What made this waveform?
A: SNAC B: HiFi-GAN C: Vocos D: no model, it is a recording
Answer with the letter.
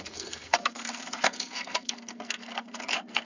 A